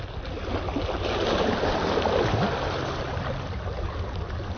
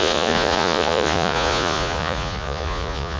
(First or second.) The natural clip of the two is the first